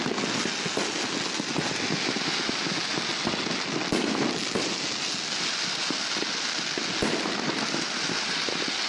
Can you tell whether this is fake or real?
real